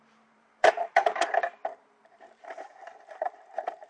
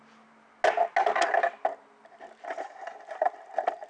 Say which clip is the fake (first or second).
first